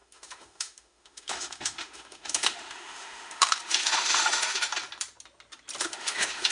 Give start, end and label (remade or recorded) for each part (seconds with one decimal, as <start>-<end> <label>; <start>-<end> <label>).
0.0-4.7 remade; 4.7-5.8 recorded; 5.8-6.5 remade